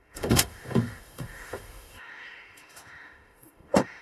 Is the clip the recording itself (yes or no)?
no